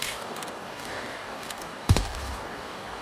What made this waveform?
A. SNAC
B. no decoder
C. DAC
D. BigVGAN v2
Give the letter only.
C